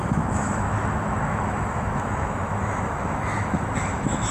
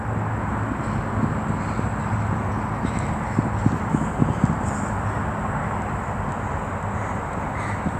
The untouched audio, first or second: second